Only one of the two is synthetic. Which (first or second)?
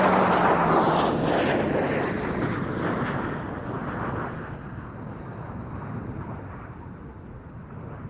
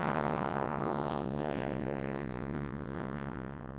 second